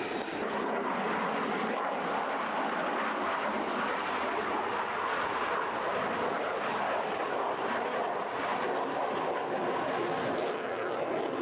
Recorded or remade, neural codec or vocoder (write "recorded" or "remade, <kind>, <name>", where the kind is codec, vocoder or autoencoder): recorded